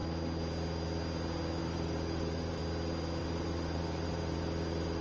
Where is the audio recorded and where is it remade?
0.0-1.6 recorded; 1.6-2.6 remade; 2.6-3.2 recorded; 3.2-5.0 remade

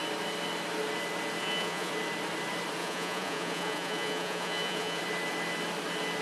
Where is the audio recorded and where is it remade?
0.0-1.4 recorded; 1.4-1.9 remade; 1.9-2.8 recorded; 2.8-5.0 remade; 5.0-6.2 recorded

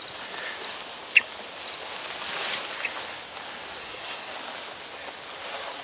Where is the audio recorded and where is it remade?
0.0-3.8 recorded; 3.8-4.3 remade; 4.3-5.8 recorded

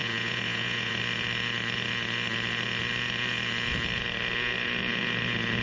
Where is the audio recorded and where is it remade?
0.0-1.0 remade; 1.0-5.6 recorded

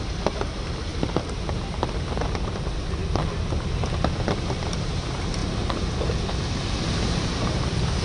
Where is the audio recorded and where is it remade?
0.0-3.0 remade; 3.0-4.3 recorded; 4.3-8.0 remade

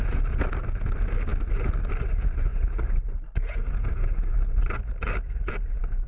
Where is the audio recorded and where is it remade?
0.0-6.1 recorded

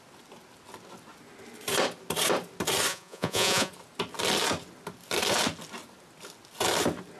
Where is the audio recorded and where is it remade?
0.0-2.9 recorded; 2.9-3.7 remade; 3.7-7.2 recorded

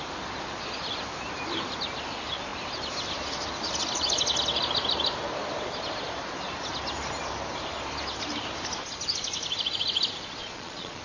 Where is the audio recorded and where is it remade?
0.0-10.4 recorded; 10.4-11.0 remade